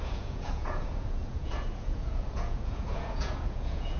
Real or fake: fake